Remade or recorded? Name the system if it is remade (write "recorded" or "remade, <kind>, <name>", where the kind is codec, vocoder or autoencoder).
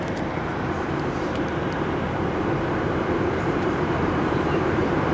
remade, vocoder, BigVGAN v2